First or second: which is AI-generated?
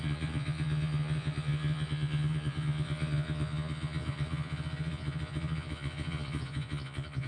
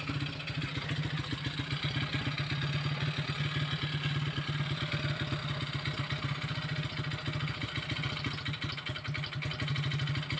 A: first